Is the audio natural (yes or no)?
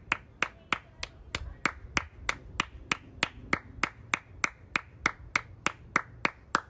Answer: yes